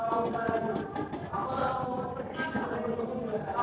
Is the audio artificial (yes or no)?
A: no